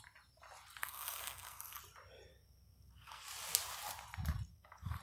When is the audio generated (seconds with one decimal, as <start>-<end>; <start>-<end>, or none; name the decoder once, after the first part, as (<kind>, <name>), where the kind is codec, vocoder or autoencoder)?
0.8-1.8 (codec, SNAC); 2.3-3.2; 4.5-5.0

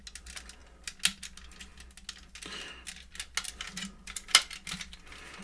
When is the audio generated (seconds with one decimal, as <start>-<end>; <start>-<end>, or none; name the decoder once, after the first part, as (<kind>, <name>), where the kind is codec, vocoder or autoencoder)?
none

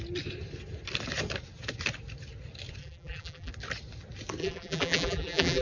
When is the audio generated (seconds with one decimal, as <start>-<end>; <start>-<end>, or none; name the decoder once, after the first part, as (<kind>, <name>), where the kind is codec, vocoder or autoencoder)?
2.8-3.5 (vocoder, BigVGAN v2); 4.4-5.6

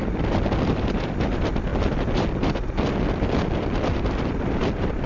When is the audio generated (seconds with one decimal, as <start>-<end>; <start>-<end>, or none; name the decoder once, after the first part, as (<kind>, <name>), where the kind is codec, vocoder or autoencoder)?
0.0-1.7 (vocoder, BigVGAN v2); 4.3-5.1